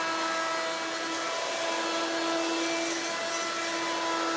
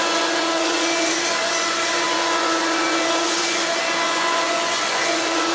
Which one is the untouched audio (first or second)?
first